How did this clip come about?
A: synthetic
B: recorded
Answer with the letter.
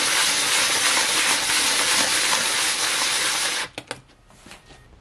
B